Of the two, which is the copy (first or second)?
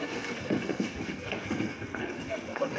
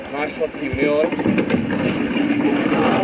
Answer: first